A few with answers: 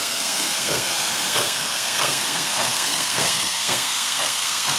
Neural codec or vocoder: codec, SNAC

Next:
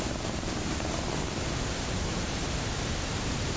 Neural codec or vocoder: vocoder, BigVGAN v2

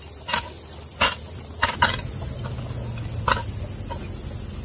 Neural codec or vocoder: none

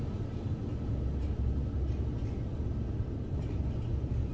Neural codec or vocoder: none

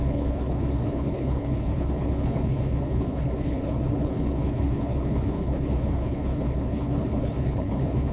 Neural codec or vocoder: codec, HILCodec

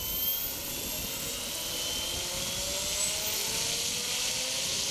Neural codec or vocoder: none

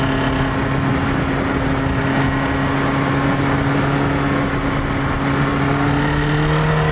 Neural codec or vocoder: none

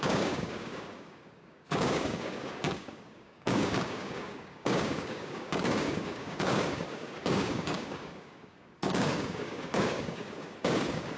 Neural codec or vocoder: codec, DAC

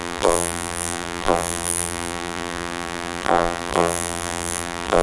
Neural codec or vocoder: vocoder, BigVGAN v2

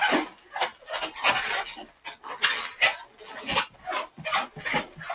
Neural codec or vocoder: none